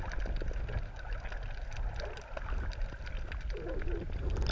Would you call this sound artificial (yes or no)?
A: no